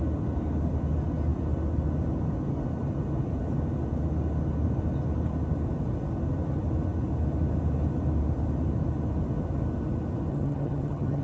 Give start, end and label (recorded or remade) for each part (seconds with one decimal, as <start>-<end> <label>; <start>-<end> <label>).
0.0-10.3 recorded; 10.3-11.2 remade